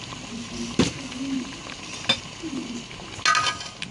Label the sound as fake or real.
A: real